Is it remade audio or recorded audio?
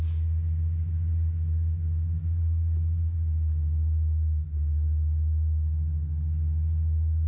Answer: recorded